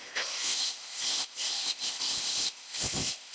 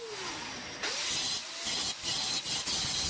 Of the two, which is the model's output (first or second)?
first